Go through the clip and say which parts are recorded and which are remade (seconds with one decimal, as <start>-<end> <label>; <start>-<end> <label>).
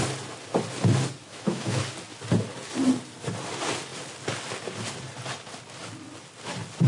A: 0.0-1.2 recorded; 1.2-1.8 remade; 1.8-6.9 recorded